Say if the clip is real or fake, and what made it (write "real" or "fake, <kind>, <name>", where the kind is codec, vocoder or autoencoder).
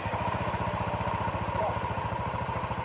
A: fake, vocoder, BigVGAN v2